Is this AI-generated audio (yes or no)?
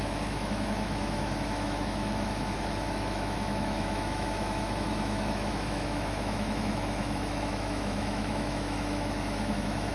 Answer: yes